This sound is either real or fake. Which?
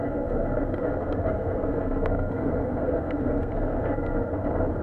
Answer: fake